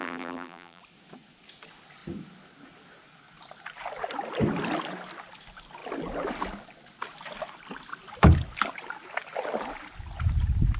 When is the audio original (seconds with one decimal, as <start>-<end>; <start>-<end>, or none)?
0.8-10.8